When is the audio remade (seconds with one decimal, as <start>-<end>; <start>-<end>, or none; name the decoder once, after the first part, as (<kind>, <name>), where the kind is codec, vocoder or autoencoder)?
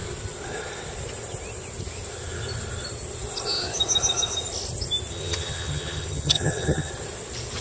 5.1-6.9 (vocoder, HiFi-GAN)